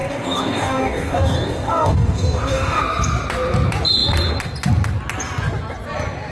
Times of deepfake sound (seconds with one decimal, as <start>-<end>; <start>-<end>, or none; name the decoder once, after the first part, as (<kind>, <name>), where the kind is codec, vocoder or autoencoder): 0.0-2.8 (codec, DAC)